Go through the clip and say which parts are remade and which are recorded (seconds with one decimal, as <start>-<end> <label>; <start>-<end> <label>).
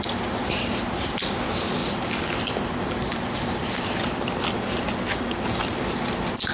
0.0-0.4 recorded; 0.4-1.1 remade; 1.1-1.8 recorded; 1.8-4.3 remade; 4.3-6.5 recorded